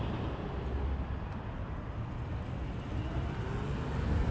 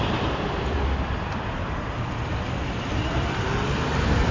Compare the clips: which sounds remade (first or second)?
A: second